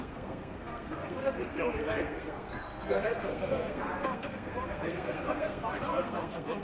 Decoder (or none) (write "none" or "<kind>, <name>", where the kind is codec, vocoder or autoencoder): codec, SNAC